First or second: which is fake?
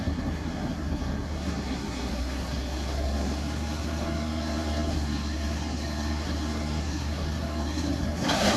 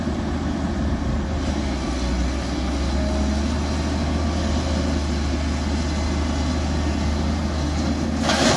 first